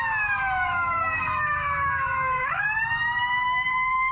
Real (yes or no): no